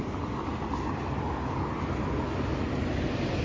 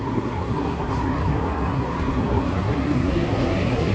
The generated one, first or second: second